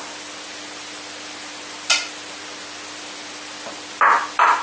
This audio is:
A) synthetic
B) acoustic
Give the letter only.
B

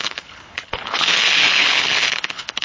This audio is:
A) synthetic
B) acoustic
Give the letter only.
A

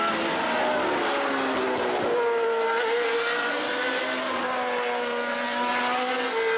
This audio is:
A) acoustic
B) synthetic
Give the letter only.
A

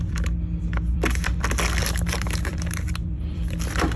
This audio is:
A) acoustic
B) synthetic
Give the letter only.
B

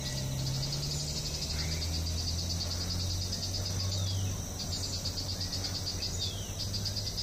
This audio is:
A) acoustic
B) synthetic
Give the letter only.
A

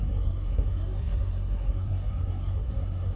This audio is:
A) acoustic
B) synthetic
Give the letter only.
B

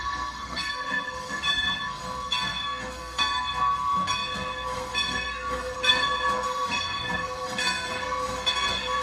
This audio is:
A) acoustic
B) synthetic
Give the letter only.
B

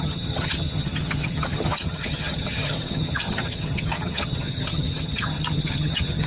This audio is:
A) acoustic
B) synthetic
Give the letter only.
B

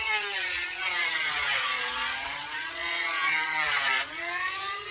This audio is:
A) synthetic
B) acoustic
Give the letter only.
A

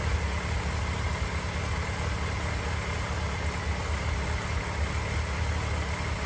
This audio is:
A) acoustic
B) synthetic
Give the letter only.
A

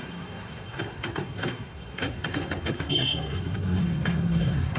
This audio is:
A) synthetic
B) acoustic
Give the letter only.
A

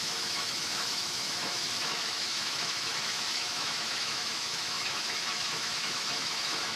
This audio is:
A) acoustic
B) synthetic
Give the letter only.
B